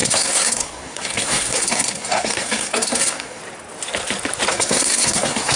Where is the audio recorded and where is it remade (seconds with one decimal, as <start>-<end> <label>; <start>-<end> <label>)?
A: 0.0-3.4 remade; 3.4-4.5 recorded; 4.5-5.6 remade